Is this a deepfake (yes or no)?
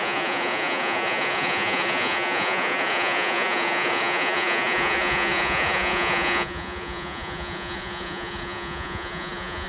yes